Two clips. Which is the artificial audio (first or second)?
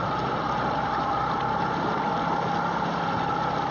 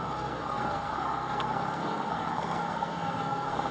second